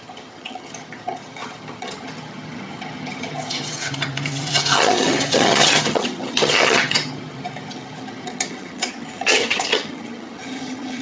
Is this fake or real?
fake